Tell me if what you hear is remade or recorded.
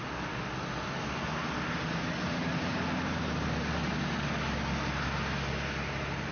recorded